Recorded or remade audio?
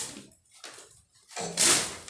recorded